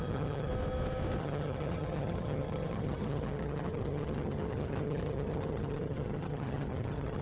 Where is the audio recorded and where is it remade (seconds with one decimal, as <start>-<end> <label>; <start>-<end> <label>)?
0.0-0.5 remade; 0.5-1.2 recorded; 1.2-7.2 remade